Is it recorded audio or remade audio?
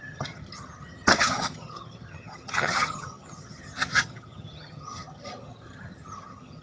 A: remade